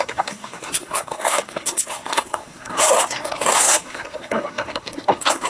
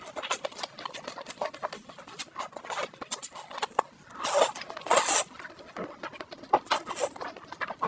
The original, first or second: second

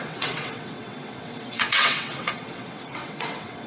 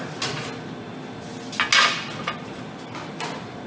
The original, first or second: second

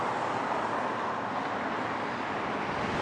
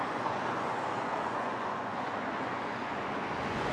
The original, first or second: first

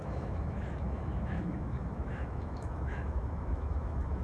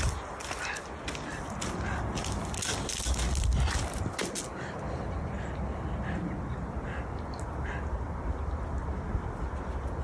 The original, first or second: second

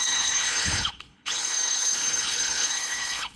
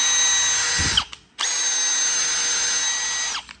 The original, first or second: second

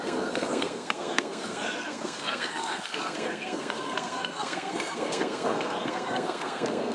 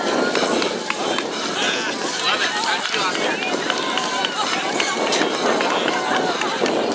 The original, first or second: second